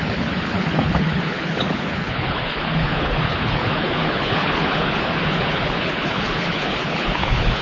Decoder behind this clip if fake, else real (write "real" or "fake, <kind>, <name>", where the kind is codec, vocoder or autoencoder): fake, codec, HILCodec